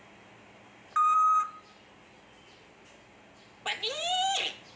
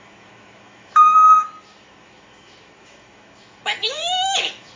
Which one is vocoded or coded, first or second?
second